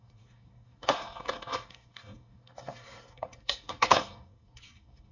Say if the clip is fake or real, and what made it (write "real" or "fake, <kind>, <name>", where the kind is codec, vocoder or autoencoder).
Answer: fake, codec, SNAC